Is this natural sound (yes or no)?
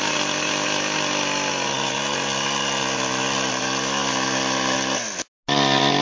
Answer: yes